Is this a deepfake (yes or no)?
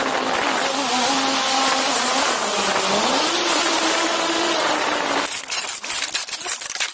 no